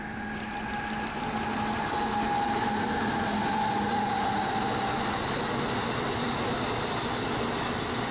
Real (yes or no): yes